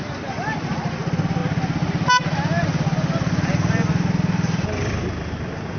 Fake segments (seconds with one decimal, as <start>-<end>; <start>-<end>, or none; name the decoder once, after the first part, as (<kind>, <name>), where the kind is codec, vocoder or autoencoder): none